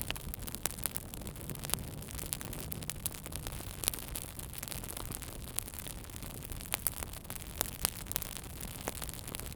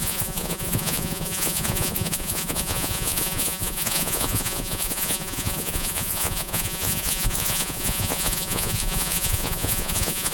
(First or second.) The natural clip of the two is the first